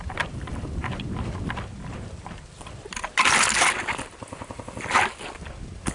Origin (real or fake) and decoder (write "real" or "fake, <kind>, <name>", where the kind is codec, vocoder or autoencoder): real